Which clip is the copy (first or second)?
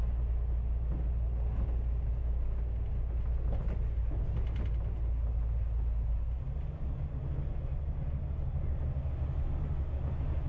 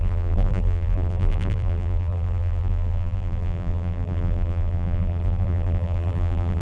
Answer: second